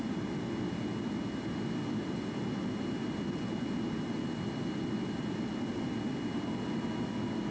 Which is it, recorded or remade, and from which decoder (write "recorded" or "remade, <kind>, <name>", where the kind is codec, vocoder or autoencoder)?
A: recorded